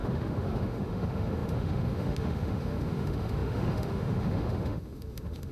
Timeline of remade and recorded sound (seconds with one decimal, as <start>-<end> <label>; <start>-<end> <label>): 0.0-5.5 remade

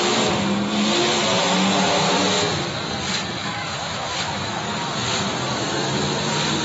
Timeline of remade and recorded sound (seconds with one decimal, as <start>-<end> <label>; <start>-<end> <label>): 0.0-3.4 recorded; 3.4-4.9 remade; 4.9-6.6 recorded